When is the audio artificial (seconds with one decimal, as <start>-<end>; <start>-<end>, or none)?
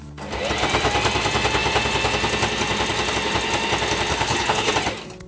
4.1-4.7